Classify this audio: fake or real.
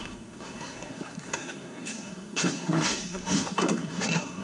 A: fake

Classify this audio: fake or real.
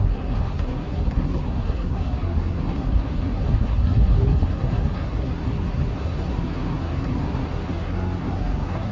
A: fake